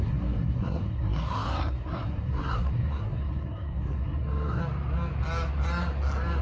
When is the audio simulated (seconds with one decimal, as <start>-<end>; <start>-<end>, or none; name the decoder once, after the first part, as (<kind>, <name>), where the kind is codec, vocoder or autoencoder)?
0.0-4.6 (codec, SNAC)